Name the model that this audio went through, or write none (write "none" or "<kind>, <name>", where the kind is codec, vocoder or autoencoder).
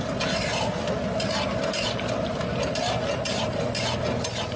none